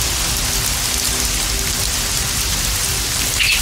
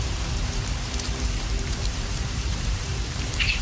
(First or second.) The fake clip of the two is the second